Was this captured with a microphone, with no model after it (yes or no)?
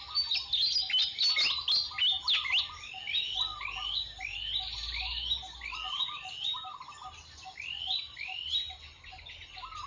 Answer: yes